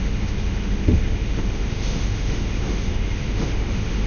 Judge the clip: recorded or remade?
remade